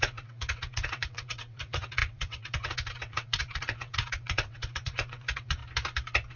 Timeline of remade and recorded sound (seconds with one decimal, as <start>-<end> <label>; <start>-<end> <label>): 0.0-5.6 remade; 5.6-6.4 recorded